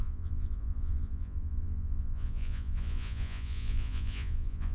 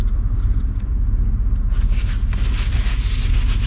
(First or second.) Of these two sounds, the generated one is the first